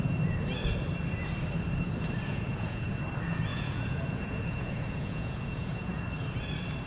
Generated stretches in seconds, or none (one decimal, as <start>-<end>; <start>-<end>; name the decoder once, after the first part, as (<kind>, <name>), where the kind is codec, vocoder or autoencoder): 2.3-3.0 (vocoder, Vocos); 3.5-6.0